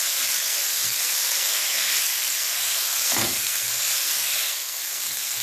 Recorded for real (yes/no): no